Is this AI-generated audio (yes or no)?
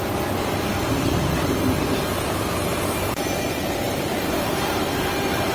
yes